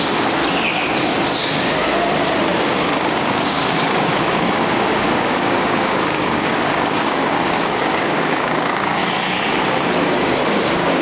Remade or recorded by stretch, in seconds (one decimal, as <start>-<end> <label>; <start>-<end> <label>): 0.0-0.4 remade; 0.4-2.8 recorded; 2.8-9.0 remade; 9.0-10.5 recorded; 10.5-11.0 remade